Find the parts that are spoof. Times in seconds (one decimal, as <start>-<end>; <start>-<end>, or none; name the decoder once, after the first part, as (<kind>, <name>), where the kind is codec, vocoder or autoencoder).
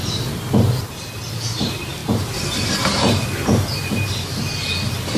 0.0-5.2 (vocoder, BigVGAN v2)